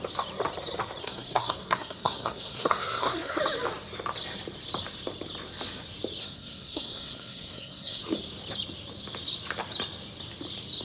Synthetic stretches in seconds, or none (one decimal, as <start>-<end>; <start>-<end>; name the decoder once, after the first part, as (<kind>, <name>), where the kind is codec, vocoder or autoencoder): 1.0-3.4 (codec, SNAC); 6.2-8.0